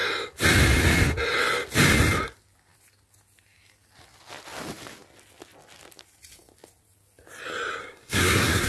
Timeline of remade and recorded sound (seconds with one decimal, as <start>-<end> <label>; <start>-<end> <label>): 0.0-7.8 recorded; 7.8-8.7 remade